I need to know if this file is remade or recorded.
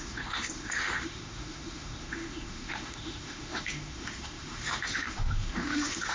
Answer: remade